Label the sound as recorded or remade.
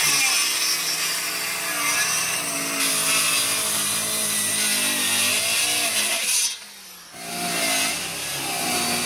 recorded